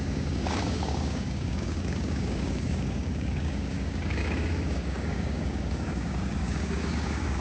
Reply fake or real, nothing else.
fake